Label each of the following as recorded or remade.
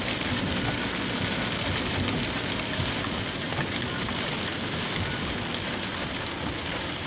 recorded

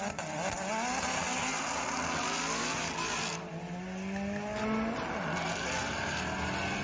recorded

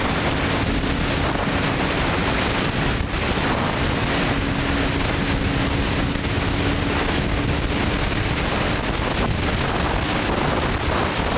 recorded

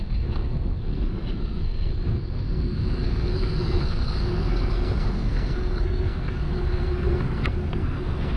remade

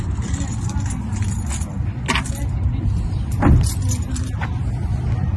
recorded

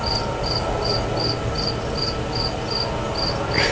recorded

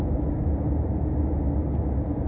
recorded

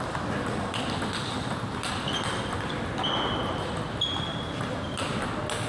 recorded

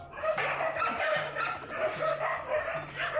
recorded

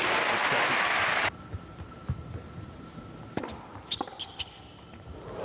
recorded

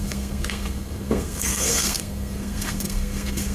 remade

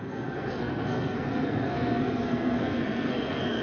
remade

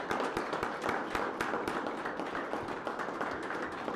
recorded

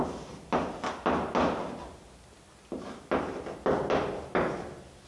recorded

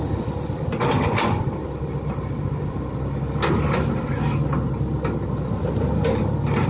recorded